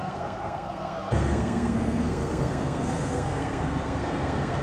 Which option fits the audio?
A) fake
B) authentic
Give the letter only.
A